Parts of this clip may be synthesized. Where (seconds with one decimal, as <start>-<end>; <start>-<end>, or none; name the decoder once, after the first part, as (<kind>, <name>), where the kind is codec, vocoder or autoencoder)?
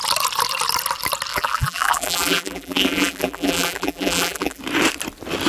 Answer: 1.3-4.6 (vocoder, BigVGAN v2)